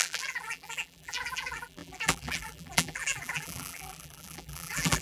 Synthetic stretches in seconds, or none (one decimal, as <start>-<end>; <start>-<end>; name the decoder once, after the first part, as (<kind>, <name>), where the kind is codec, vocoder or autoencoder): 0.0-5.0 (vocoder, BigVGAN v2)